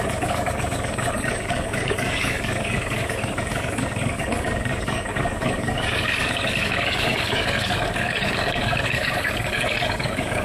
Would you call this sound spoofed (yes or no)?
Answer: yes